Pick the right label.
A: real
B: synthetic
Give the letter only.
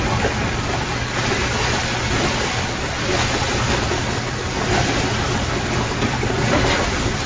A